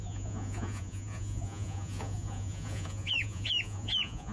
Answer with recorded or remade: remade